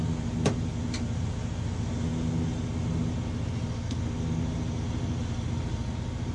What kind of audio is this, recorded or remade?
recorded